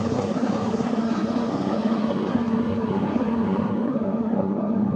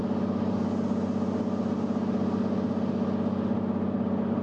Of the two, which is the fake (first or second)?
first